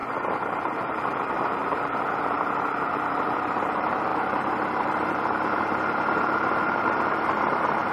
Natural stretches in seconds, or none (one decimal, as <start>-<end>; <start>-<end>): none